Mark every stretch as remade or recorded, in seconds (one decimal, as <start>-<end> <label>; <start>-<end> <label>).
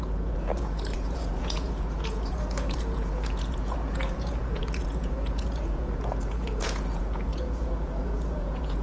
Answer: 0.0-8.8 remade